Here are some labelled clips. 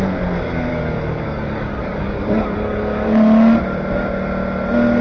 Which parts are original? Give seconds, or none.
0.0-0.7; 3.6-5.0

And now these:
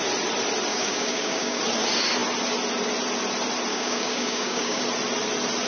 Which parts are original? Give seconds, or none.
0.0-0.7; 1.6-3.7; 4.8-5.7